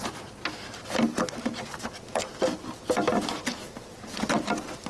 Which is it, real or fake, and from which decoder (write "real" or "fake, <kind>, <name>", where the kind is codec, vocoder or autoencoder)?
real